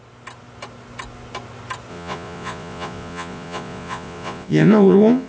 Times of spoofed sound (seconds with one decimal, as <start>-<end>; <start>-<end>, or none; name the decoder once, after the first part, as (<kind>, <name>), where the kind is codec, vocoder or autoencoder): 1.9-5.3 (vocoder, Vocos)